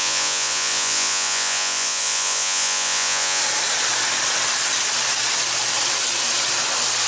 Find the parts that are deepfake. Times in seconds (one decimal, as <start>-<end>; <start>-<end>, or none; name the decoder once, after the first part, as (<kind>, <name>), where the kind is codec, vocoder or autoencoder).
0.0-3.4 (vocoder, Vocos)

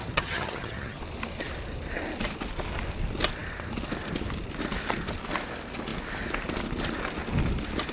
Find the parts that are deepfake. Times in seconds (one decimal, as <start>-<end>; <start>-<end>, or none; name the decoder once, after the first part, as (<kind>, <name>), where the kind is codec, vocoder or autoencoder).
0.0-1.0 (vocoder, HiFi-GAN)

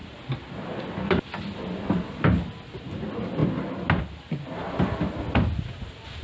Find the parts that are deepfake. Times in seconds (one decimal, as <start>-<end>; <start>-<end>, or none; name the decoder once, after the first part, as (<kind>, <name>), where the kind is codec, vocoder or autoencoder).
none

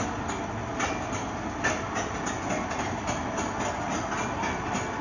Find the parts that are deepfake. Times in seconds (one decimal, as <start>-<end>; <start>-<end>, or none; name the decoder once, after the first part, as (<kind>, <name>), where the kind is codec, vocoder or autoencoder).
none

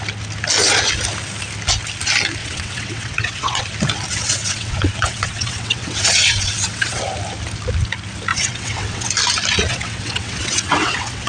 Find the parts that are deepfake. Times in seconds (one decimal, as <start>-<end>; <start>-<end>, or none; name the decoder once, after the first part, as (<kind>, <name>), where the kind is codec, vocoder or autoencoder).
2.4-3.6 (vocoder, WaveNeXt); 4.1-7.0; 8.3-9.1; 9.7-11.3

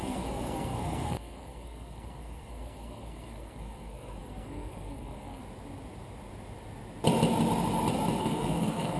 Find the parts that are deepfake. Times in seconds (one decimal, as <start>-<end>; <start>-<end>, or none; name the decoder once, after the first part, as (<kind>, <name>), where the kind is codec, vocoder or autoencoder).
0.0-5.4 (codec, SNAC); 8.2-9.0

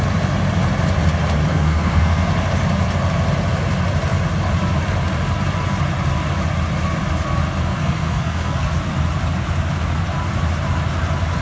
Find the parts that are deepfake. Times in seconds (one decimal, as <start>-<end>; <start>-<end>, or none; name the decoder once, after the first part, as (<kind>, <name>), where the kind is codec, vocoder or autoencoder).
1.5-2.3 (codec, SNAC); 7.7-8.7

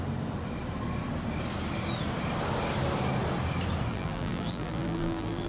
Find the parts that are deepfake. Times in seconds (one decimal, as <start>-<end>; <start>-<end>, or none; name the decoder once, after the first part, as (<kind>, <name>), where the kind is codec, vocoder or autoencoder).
3.9-5.5 (vocoder, BigVGAN v2)